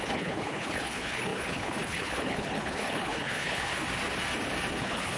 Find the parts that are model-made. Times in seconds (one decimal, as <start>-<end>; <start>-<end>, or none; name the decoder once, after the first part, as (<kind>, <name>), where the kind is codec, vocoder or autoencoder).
0.0-3.7 (codec, HILCodec); 4.8-5.2